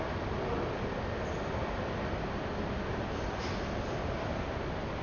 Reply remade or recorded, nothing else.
recorded